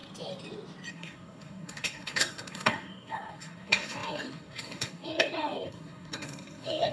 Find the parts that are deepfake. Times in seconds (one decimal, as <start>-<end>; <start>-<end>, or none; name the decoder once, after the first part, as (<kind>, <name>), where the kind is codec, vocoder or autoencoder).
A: 0.9-6.9 (codec, SNAC)